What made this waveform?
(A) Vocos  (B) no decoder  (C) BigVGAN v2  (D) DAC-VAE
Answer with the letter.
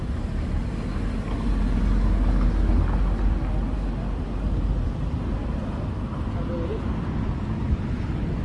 B